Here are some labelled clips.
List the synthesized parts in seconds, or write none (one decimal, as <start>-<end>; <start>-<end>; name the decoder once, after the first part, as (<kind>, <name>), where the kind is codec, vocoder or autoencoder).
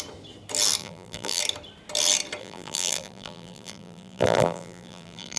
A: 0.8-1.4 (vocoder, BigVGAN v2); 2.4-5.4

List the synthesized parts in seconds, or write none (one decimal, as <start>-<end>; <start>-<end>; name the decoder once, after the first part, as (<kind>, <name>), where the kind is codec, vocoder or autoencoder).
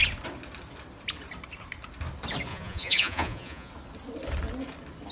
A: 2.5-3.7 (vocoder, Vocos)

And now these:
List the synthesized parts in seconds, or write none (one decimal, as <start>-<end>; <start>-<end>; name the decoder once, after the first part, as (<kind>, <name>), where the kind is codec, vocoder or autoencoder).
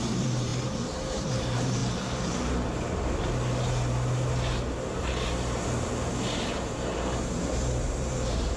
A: 0.0-1.8 (vocoder, BigVGAN v2); 6.2-8.6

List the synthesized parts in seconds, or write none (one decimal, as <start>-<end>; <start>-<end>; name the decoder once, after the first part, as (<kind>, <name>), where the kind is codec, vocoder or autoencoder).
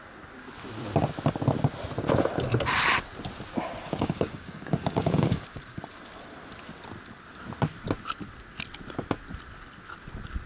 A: 3.7-5.8 (codec, DAC)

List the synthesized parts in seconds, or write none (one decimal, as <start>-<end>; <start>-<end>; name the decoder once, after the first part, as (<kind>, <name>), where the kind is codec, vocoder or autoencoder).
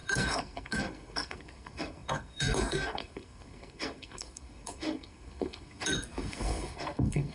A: 0.0-7.3 (codec, SNAC)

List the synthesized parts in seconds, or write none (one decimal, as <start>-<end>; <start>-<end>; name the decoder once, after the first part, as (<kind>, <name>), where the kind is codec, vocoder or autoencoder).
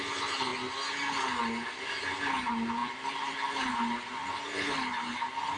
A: none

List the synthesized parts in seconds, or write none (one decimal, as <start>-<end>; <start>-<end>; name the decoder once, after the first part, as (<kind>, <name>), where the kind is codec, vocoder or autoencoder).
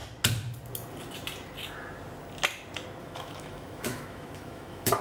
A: 3.0-5.0 (autoencoder, DAC-VAE)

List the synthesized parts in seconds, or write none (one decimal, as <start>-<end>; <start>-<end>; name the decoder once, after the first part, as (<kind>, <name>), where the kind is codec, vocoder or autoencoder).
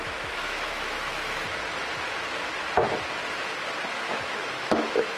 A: 0.0-1.4 (autoencoder, DAC-VAE); 4.1-5.2